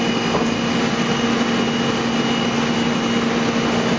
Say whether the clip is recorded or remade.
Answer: recorded